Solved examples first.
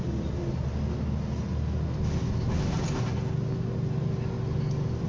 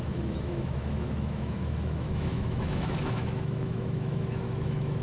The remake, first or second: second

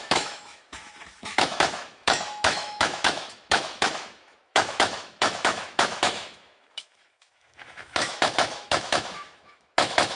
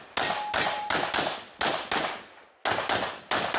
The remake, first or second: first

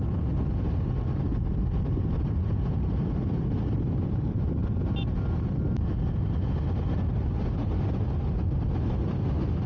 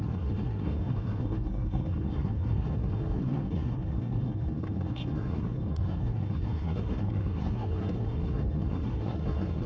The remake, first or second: second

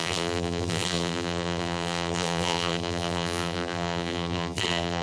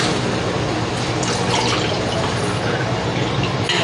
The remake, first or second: first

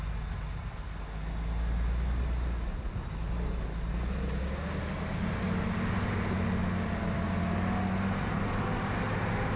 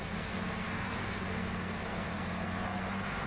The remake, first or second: second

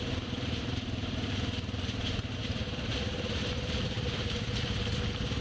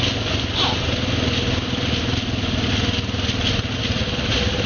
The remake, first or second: first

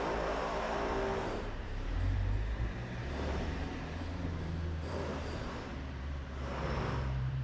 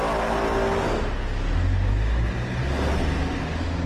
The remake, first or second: first